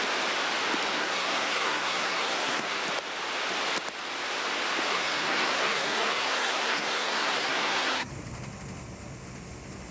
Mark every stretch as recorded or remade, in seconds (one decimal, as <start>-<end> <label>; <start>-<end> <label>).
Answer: 0.0-0.9 recorded; 0.9-2.8 remade; 2.8-4.9 recorded; 4.9-8.1 remade; 8.1-9.9 recorded